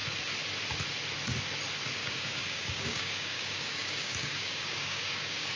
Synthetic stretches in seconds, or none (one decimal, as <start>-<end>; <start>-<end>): 2.0-5.6